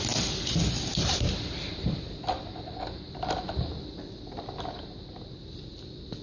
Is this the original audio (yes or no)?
yes